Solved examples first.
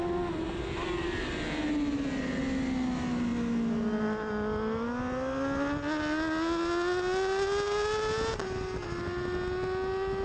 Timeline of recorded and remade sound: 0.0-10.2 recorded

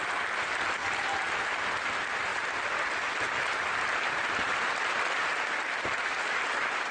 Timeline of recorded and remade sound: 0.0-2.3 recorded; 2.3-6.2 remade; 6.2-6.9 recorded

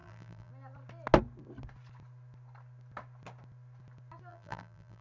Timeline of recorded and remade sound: 0.0-0.5 remade; 0.5-4.3 recorded; 4.3-5.0 remade